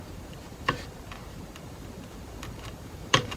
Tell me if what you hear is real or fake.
fake